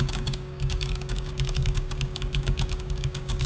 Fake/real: fake